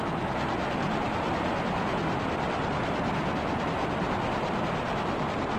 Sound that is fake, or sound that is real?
real